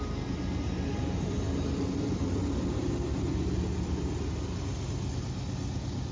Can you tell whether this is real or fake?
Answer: real